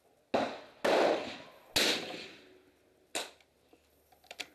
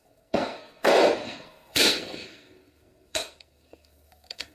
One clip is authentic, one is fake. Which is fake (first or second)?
second